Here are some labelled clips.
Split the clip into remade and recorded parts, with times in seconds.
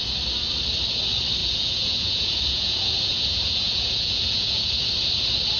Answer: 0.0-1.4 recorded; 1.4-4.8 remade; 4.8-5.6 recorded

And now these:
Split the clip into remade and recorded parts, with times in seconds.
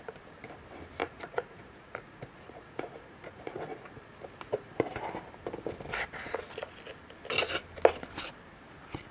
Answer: 0.0-1.0 recorded; 1.0-3.6 remade; 3.6-9.1 recorded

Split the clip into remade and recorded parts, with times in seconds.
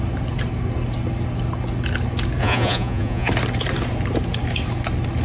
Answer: 0.0-2.4 recorded; 2.4-3.3 remade; 3.3-5.2 recorded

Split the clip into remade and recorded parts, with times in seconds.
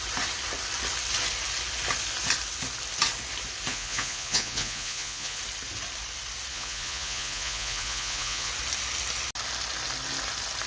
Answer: 0.0-3.7 recorded; 3.7-5.4 remade; 5.4-6.5 recorded; 6.5-8.5 remade; 8.5-10.7 recorded